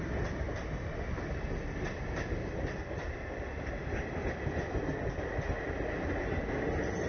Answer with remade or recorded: recorded